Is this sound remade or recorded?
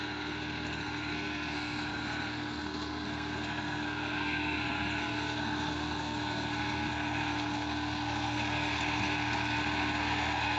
remade